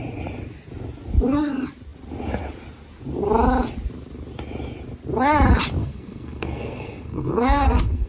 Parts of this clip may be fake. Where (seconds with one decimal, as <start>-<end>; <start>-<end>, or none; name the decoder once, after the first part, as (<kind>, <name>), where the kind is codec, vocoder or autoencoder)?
5.8-8.1 (codec, SNAC)